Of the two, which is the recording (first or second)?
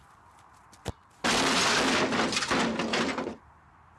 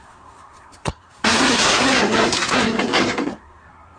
first